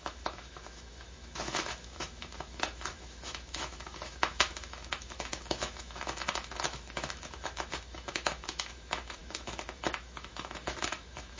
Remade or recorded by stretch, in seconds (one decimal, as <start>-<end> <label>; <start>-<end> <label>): 0.0-11.4 remade